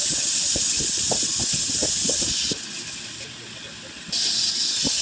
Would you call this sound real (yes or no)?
yes